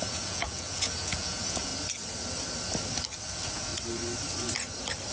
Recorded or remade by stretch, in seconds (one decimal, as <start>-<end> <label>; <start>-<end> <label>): 0.0-1.7 remade; 1.7-3.3 recorded; 3.3-3.7 remade; 3.7-5.1 recorded